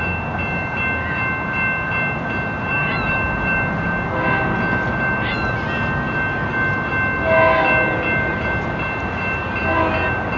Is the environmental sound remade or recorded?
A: recorded